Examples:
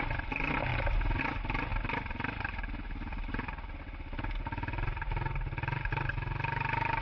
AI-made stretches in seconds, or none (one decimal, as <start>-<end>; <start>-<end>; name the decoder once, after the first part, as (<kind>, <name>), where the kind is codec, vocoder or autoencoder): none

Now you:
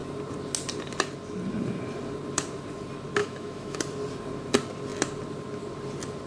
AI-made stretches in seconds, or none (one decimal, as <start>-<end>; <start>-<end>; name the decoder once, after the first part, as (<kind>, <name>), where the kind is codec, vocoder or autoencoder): 3.2-3.8 (autoencoder, DAC-VAE)

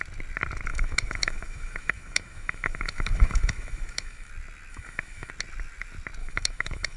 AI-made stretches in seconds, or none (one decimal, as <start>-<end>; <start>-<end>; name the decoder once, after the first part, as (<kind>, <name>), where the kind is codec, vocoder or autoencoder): 0.7-4.3 (autoencoder, DAC-VAE); 4.7-5.3; 6.2-7.0

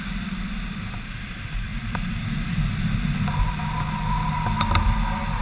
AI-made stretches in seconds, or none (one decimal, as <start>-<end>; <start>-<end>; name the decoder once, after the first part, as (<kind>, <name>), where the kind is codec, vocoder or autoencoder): none

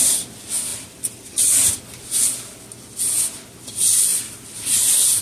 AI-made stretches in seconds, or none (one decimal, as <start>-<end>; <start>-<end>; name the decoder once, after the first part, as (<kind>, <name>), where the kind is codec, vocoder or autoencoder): 4.1-5.2 (vocoder, BigVGAN v2)

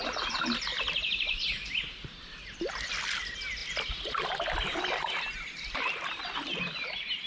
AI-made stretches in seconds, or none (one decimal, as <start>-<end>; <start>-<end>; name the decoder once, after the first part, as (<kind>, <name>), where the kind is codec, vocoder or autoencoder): none